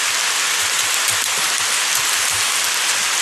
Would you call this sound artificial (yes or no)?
no